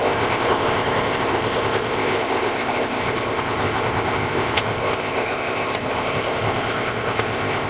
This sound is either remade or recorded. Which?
remade